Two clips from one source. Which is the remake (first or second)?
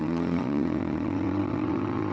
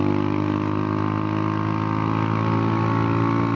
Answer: first